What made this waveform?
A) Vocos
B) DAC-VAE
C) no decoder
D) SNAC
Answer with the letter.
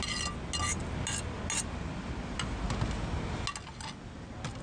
C